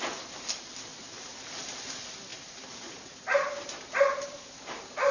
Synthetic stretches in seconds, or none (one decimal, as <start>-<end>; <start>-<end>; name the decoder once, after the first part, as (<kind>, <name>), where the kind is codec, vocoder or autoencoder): 0.9-1.4 (vocoder, BigVGAN v2); 2.3-5.1